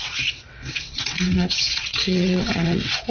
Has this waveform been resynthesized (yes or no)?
yes